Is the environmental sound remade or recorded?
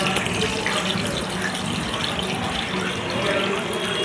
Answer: recorded